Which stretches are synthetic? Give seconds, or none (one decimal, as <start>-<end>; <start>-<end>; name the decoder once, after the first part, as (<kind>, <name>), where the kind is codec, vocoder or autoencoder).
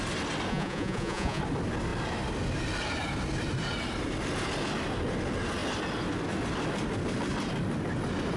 0.5-1.4 (vocoder, Vocos)